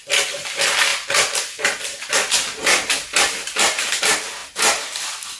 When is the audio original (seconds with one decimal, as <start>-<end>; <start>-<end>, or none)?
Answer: 0.0-5.4